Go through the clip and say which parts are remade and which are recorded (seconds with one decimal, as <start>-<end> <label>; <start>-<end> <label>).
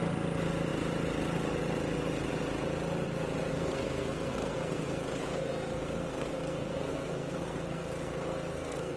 0.0-3.5 recorded; 3.5-9.0 remade